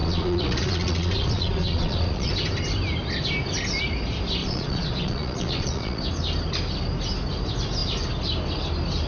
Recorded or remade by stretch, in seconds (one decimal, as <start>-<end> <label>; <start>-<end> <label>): 0.0-2.3 remade; 2.3-4.4 recorded; 4.4-6.0 remade; 6.0-9.1 recorded